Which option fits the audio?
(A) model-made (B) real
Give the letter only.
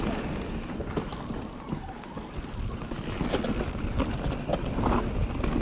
B